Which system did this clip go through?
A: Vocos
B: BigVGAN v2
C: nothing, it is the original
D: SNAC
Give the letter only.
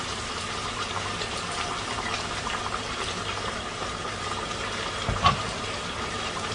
B